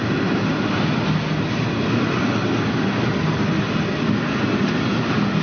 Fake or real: real